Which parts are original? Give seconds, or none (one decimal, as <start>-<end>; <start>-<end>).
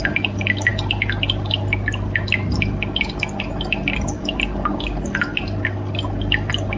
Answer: 0.0-6.8